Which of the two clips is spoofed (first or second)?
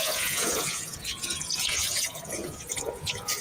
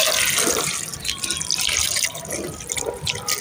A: first